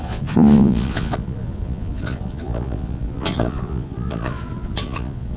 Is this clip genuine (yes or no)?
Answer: no